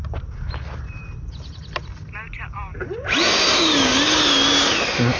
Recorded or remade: recorded